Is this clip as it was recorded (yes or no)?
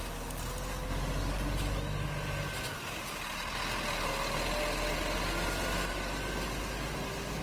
yes